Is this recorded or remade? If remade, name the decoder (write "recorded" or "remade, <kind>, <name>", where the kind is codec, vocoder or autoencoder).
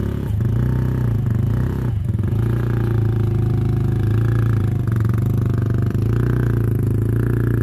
remade, vocoder, Vocos